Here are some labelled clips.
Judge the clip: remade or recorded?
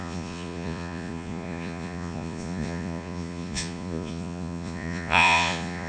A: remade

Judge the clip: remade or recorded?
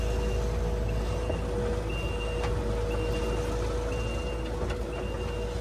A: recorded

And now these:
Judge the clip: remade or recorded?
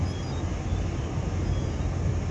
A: recorded